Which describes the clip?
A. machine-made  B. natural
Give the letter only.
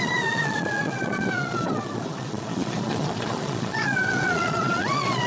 A